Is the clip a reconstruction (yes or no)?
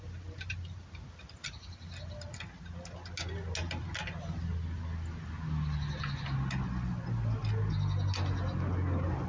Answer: no